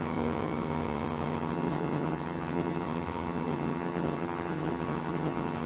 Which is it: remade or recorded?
remade